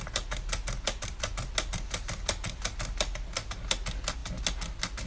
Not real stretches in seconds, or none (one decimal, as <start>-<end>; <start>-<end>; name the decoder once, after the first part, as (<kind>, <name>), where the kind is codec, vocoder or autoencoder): none